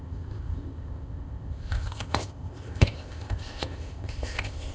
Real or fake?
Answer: fake